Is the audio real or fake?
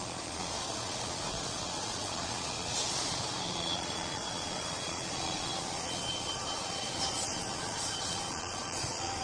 fake